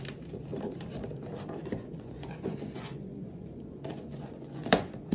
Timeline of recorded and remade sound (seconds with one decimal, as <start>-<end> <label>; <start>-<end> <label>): 0.0-1.6 recorded; 1.6-5.1 remade